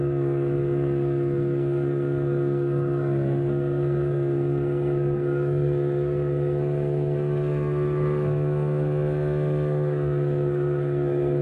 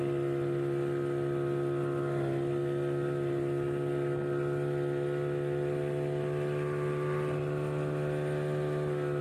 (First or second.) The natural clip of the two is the second